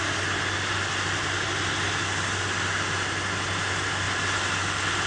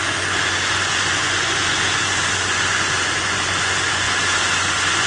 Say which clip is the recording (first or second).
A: first